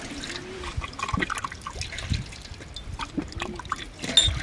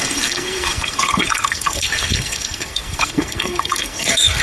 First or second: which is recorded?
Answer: first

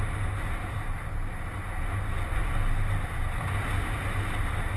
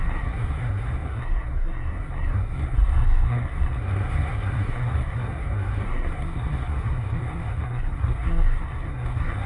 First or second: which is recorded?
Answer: first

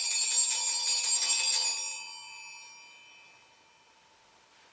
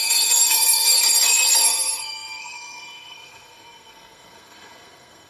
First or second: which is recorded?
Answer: first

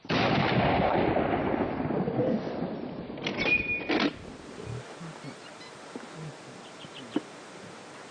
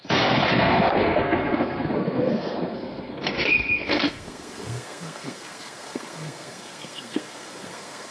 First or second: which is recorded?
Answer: first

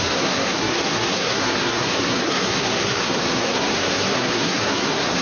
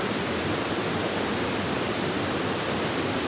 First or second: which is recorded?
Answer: second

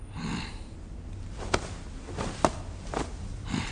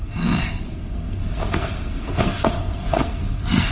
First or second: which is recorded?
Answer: first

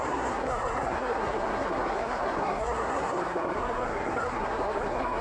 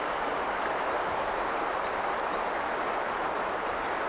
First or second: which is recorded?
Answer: second